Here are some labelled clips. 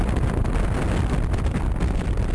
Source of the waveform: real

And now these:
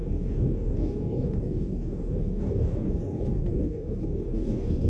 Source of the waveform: fake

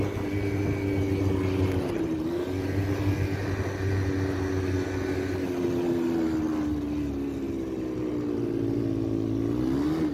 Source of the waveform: real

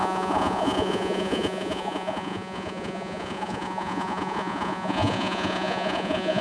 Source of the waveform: fake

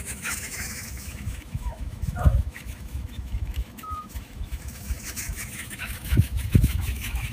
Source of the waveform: fake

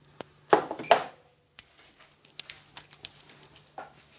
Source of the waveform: real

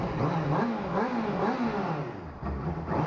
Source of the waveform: real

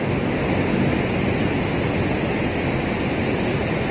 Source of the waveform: real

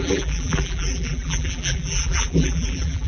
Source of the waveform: fake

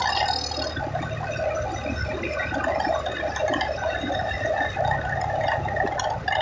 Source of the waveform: real